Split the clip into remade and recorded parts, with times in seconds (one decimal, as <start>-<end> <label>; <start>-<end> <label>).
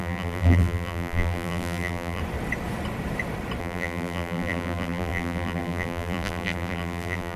0.0-2.2 remade; 2.2-3.6 recorded; 3.6-7.4 remade